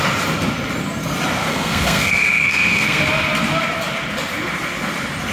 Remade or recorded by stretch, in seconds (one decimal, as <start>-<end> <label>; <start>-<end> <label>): 0.0-1.5 recorded; 1.5-3.0 remade; 3.0-5.3 recorded